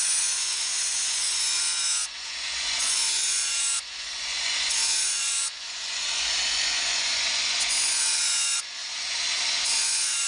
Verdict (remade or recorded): remade